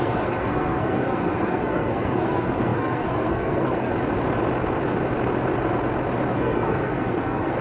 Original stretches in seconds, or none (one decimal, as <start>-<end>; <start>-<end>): 3.9-6.3